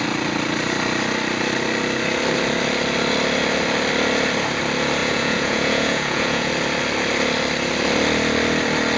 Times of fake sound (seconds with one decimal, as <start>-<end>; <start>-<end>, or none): 5.0-6.5